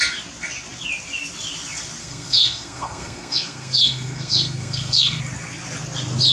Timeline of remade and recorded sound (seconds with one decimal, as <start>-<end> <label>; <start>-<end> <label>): 0.0-2.0 recorded; 2.0-5.2 remade; 5.2-6.3 recorded